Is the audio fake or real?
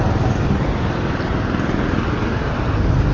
real